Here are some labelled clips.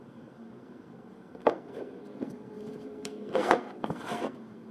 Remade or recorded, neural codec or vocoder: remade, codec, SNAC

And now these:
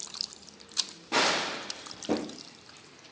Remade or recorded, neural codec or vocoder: remade, vocoder, BigVGAN v2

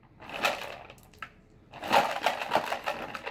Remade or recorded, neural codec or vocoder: recorded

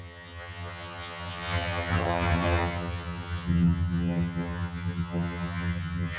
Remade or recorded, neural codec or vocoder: remade, vocoder, HiFi-GAN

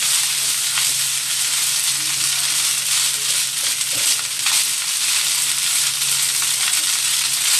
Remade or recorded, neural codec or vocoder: recorded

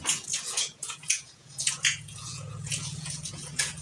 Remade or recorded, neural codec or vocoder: remade, vocoder, Vocos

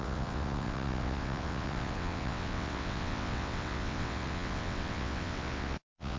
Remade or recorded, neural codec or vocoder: remade, vocoder, WaveNeXt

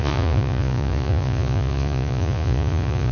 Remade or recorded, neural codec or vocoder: remade, vocoder, Vocos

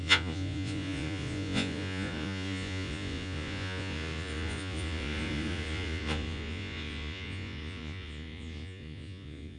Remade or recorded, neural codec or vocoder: remade, vocoder, Vocos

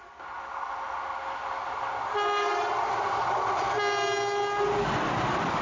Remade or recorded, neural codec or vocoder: recorded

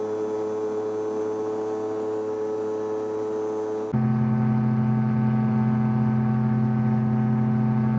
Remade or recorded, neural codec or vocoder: recorded